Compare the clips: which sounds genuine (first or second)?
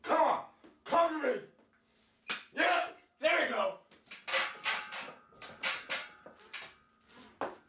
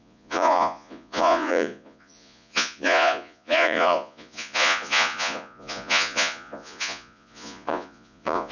first